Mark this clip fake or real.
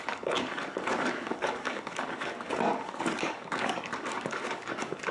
fake